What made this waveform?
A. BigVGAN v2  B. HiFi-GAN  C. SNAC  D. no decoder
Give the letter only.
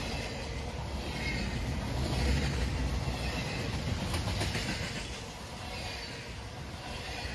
D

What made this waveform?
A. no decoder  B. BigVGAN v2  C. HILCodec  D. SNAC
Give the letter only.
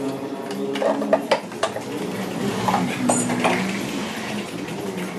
A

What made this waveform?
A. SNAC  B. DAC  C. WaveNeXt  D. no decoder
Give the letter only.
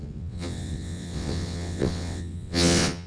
C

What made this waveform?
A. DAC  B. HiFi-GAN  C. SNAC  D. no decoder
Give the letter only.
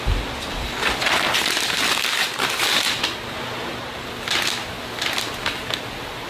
D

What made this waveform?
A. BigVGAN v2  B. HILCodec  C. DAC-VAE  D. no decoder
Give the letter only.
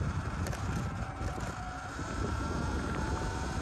D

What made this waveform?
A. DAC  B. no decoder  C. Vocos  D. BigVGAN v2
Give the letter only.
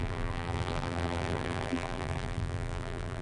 D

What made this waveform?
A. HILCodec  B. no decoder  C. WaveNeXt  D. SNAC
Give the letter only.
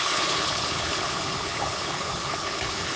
A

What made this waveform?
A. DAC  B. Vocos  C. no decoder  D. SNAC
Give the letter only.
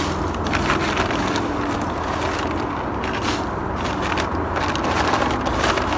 C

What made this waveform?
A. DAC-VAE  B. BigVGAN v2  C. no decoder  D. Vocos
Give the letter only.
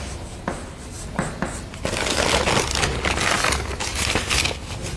C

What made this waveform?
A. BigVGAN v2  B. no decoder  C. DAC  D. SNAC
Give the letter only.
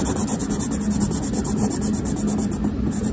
B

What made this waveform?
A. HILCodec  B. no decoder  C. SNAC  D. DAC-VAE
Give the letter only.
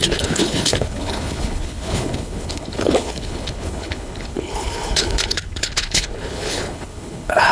A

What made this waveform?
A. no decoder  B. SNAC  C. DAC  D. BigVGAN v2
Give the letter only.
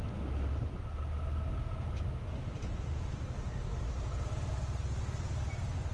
A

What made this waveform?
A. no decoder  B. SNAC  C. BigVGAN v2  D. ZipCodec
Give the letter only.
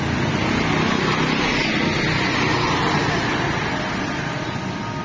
A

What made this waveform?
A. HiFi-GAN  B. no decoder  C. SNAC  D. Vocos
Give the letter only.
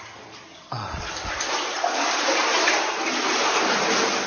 B